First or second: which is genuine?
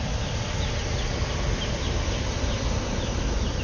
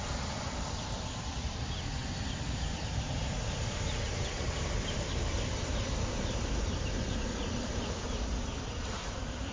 first